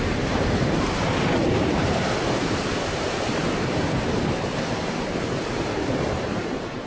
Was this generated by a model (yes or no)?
yes